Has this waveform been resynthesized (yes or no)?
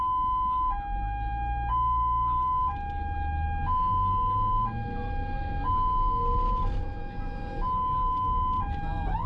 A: no